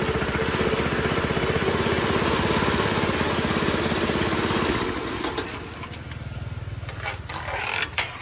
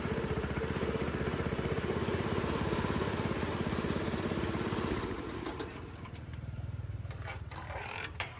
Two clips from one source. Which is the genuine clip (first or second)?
first